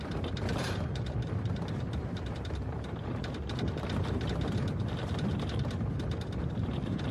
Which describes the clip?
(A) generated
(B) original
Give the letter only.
A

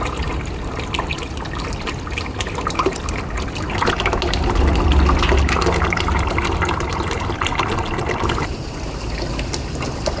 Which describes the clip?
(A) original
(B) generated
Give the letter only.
A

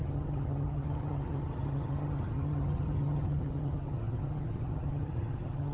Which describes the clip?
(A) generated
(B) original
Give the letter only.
A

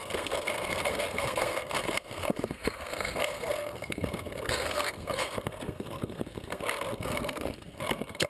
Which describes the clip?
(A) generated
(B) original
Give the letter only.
A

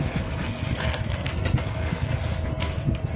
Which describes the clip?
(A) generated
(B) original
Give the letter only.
A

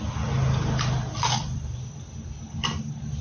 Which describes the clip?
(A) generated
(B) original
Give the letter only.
A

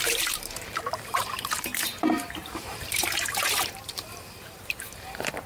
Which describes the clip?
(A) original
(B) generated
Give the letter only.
B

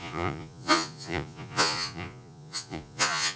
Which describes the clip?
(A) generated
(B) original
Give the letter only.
A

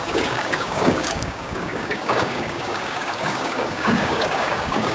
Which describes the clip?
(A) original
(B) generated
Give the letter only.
B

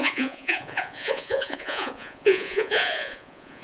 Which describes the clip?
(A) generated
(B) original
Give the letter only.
A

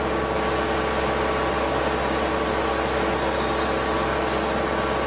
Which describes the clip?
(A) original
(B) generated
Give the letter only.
A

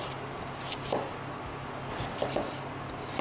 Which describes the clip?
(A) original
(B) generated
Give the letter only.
A